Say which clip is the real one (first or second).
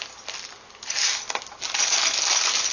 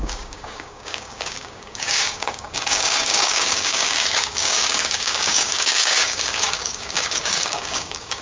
first